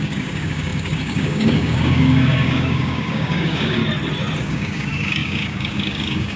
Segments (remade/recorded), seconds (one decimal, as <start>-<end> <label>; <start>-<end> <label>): 0.0-3.8 remade; 3.8-4.4 recorded; 4.4-6.4 remade

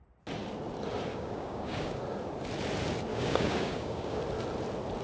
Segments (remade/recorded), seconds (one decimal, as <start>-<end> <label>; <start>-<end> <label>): 0.0-1.1 recorded; 1.1-2.0 remade; 2.0-3.1 recorded; 3.1-4.2 remade; 4.2-5.0 recorded

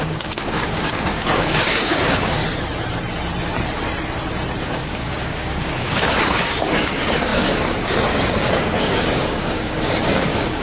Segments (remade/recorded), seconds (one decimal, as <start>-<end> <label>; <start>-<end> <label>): 0.0-2.4 remade; 2.4-4.6 recorded; 4.6-10.6 remade

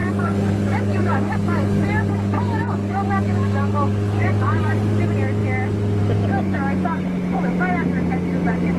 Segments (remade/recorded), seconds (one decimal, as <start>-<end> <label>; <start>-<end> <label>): 0.0-4.6 remade; 4.6-8.8 recorded

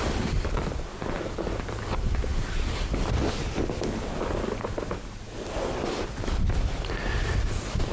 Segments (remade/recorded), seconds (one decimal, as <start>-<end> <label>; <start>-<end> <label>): 0.0-7.9 recorded

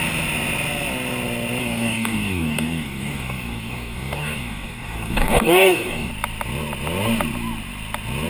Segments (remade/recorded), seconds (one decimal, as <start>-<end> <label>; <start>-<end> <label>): 0.0-1.6 recorded; 1.6-6.1 remade; 6.1-8.3 recorded

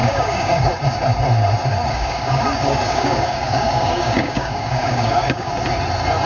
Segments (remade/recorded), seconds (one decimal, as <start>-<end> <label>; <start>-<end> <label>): 0.0-0.7 remade; 0.7-1.7 recorded; 1.7-5.5 remade; 5.5-6.3 recorded